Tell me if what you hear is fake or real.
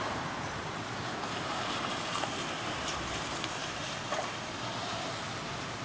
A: fake